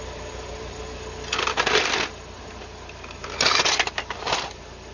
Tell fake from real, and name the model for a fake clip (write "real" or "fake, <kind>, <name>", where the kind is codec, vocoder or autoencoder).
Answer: real